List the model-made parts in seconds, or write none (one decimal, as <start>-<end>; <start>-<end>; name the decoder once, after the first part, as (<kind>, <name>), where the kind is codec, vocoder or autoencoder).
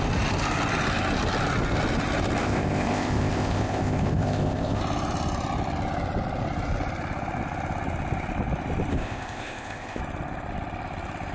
2.4-4.8 (codec, ZipCodec); 8.9-10.0